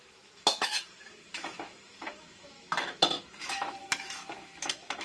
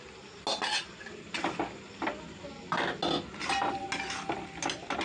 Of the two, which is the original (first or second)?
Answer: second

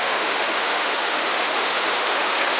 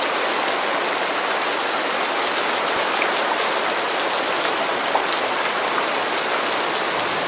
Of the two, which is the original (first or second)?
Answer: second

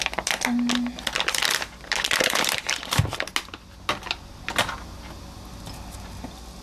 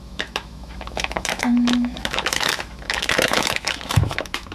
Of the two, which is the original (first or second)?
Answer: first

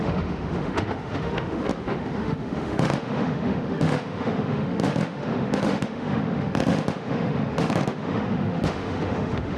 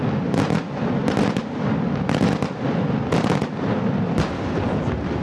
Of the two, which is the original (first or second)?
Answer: second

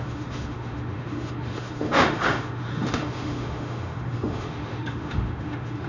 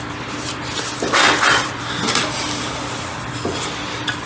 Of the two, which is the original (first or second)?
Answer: second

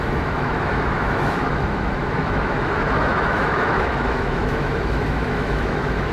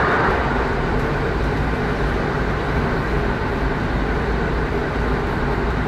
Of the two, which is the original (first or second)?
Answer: second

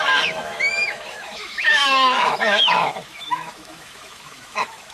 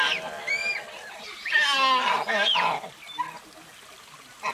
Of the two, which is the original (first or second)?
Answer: second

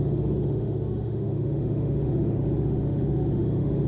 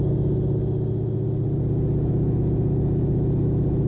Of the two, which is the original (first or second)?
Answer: second